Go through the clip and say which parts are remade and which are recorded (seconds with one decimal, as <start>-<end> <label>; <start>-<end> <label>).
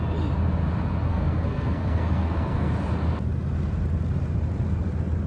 0.0-1.1 recorded; 1.1-2.7 remade; 2.7-5.3 recorded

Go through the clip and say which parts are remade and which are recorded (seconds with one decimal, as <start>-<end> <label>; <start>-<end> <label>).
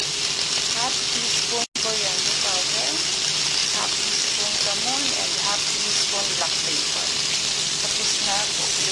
0.0-8.9 recorded